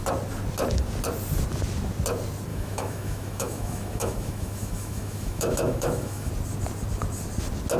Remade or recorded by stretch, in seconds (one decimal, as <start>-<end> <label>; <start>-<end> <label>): 0.0-2.5 recorded; 2.5-6.3 remade; 6.3-7.8 recorded